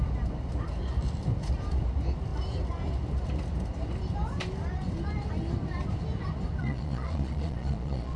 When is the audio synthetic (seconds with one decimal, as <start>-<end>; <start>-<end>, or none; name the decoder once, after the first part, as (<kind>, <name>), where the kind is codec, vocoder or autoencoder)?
6.6-8.2 (vocoder, Vocos)